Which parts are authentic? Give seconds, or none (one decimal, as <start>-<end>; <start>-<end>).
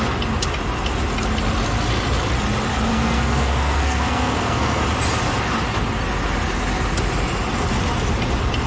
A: 0.0-2.9; 4.8-8.7